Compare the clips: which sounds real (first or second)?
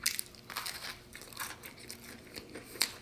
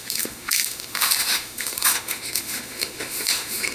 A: first